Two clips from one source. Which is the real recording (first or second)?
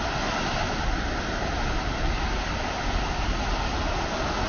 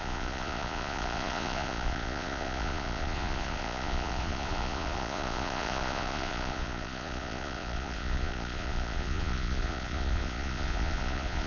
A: first